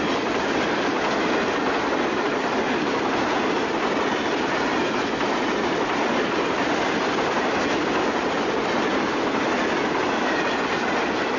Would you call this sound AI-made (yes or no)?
no